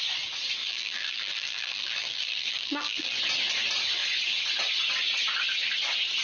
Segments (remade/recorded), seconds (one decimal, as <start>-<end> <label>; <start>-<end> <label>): 0.0-0.6 recorded; 0.6-3.2 remade; 3.2-6.2 recorded